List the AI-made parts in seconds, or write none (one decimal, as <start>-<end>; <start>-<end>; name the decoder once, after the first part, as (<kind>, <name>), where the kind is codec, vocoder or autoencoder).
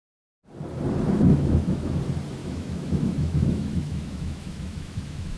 1.3-2.0 (autoencoder, DAC-VAE); 2.4-5.4